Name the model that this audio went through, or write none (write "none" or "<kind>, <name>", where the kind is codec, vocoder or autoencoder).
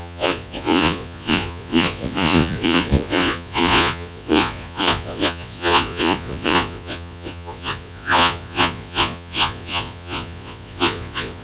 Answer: vocoder, Vocos